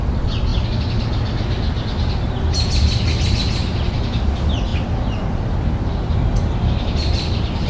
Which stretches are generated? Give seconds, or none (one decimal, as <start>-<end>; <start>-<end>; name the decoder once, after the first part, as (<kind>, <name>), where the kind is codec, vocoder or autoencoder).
none